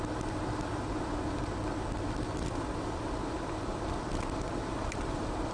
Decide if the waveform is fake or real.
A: real